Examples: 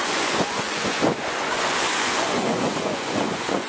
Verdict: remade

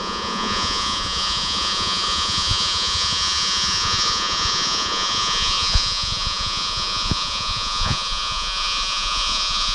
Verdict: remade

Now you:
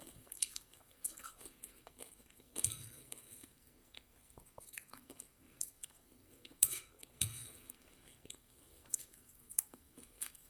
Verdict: remade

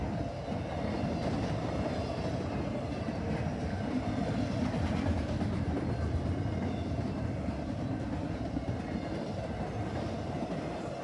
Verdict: recorded